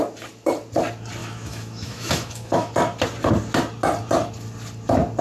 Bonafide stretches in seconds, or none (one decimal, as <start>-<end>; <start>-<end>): 0.0-1.2; 2.7-5.2